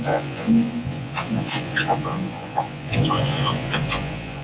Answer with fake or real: fake